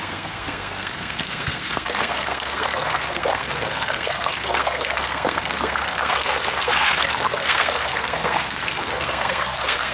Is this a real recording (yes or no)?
no